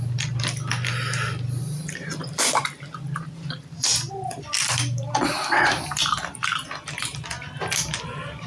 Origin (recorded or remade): remade